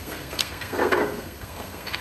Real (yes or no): no